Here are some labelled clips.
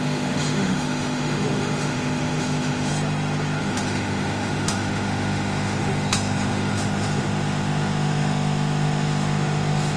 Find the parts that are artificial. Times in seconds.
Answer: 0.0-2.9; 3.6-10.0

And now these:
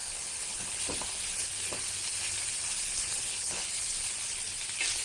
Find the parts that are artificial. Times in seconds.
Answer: 0.0-0.8; 3.3-4.1

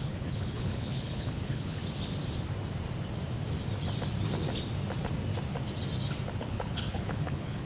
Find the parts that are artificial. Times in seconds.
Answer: 0.0-1.8; 6.4-7.7

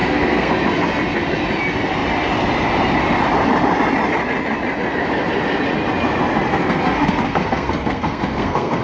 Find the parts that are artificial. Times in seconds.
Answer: 0.0-0.5; 6.5-8.8